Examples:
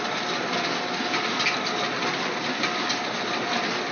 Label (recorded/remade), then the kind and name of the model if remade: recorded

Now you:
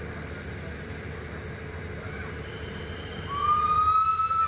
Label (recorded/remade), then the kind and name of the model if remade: recorded